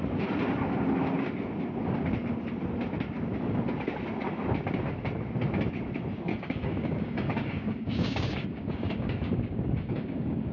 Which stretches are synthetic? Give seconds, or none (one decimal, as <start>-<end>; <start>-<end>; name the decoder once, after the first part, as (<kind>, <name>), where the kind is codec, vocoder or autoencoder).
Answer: 6.3-10.5 (codec, DAC)